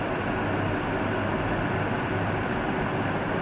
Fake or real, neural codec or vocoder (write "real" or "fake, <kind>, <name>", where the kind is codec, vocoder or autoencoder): real